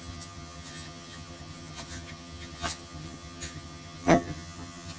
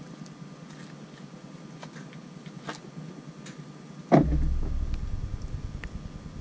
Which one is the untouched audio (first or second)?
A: second